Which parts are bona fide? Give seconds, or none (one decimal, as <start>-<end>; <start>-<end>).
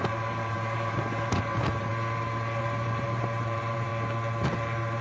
1.9-2.6; 3.9-5.0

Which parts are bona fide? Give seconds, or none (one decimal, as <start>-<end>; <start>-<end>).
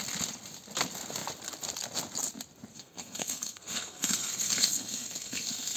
0.0-2.7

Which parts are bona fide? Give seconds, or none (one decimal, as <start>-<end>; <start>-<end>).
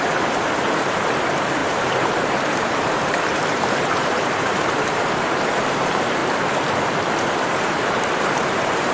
6.2-7.5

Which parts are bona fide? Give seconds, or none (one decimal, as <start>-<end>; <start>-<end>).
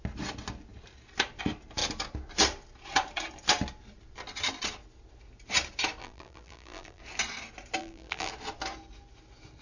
0.0-6.0; 7.0-7.8; 8.3-9.6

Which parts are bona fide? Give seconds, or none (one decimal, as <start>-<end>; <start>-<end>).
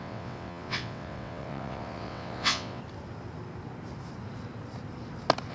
2.8-5.5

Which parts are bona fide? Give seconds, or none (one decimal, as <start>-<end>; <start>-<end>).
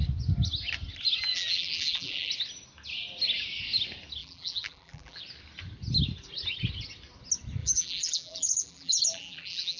0.0-1.3; 2.3-4.2; 5.2-7.6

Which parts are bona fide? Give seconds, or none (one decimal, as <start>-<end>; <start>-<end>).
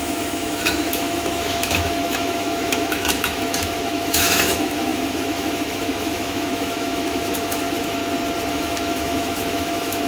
8.0-8.5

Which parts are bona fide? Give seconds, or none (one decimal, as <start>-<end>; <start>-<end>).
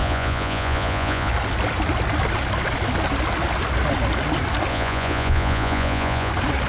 1.3-4.7; 6.3-6.7